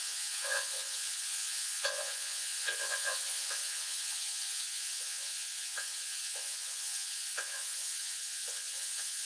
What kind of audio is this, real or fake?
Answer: fake